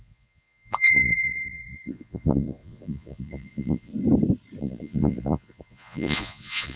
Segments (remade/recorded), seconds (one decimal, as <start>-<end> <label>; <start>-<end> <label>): 0.0-3.9 remade; 3.9-4.6 recorded; 4.6-6.8 remade